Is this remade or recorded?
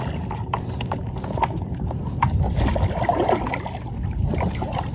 recorded